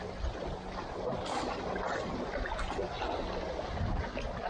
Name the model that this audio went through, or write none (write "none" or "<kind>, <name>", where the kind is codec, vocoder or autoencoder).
none